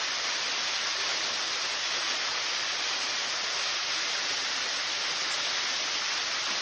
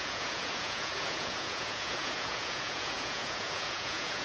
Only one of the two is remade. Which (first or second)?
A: second